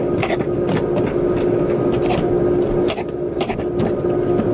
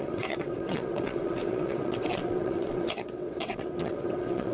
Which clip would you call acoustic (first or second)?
first